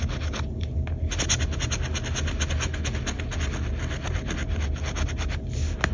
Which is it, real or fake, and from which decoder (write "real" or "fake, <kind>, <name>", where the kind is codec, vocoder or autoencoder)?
real